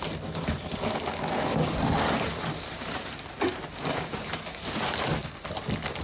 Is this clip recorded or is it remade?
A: recorded